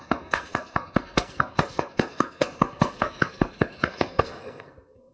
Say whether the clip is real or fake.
fake